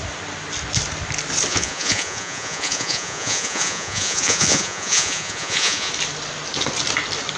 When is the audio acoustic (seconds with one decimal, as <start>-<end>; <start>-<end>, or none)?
0.0-1.5; 5.9-7.4